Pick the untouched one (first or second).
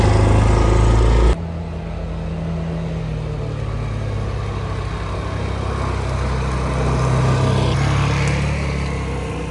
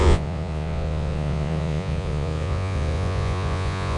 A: first